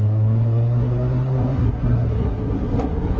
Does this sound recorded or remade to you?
remade